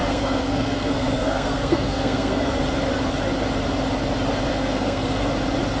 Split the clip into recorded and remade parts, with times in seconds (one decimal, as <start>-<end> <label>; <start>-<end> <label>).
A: 0.0-2.6 remade; 2.6-4.5 recorded; 4.5-5.3 remade; 5.3-5.8 recorded